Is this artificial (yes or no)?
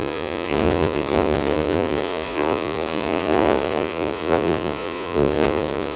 yes